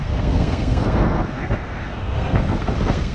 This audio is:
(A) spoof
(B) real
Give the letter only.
A